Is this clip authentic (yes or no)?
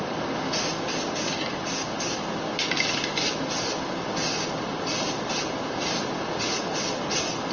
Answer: yes